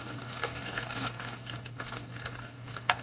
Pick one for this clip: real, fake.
fake